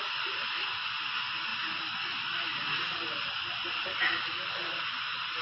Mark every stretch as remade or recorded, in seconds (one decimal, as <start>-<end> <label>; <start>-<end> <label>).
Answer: 0.0-5.4 recorded